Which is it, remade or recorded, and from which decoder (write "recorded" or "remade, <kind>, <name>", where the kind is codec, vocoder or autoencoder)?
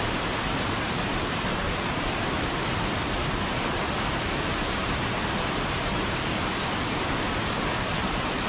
recorded